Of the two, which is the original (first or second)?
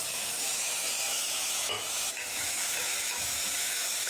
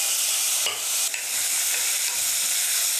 second